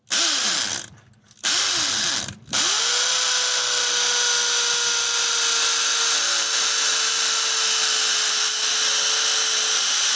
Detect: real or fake real